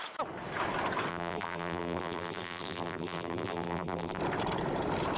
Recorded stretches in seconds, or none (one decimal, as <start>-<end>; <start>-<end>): 0.0-1.1; 4.2-5.2